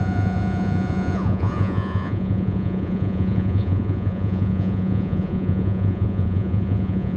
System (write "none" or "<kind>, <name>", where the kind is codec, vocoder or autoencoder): vocoder, Vocos